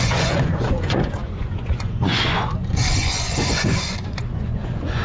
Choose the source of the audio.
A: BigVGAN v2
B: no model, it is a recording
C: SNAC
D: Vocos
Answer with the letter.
D